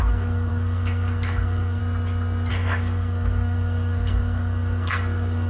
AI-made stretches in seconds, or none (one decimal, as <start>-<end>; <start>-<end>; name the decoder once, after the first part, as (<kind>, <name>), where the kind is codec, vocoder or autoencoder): 0.0-1.8 (codec, SNAC); 2.5-5.5